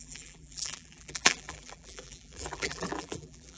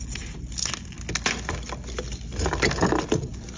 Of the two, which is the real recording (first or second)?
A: second